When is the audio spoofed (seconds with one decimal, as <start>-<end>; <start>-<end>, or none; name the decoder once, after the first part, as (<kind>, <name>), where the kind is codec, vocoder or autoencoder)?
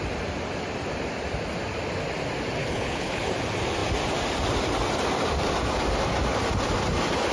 2.6-3.3 (codec, HILCodec)